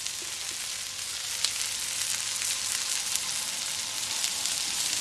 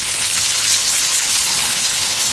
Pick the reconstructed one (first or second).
second